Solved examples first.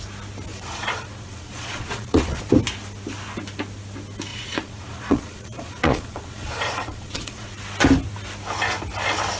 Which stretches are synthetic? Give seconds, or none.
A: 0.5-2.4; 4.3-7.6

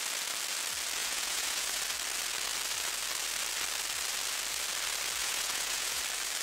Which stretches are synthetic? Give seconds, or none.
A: 1.0-1.8; 5.2-6.0

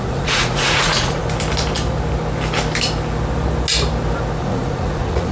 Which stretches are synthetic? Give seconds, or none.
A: 0.0-1.2; 4.4-5.3

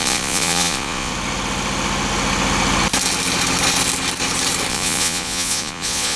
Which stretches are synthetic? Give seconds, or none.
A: 0.0-1.1; 4.7-6.2

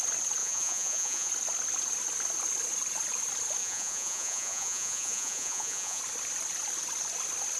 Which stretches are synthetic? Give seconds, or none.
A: 0.4-1.3; 3.6-6.0

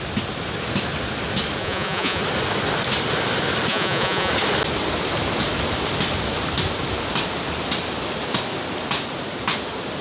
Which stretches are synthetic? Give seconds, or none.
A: 1.6-2.2; 3.7-4.3

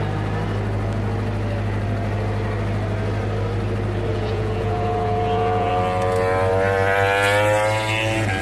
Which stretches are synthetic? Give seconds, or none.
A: 4.1-5.7

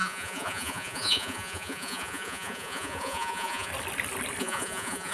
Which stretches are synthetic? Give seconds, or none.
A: 0.0-3.7; 4.4-5.1